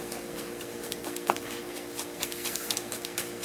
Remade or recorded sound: remade